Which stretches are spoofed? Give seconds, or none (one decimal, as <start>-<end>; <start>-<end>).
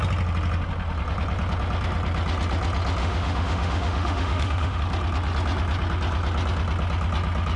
3.0-4.8